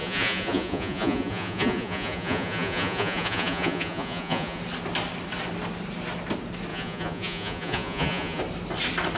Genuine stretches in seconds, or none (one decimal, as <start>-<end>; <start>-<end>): 4.6-6.7; 8.4-9.2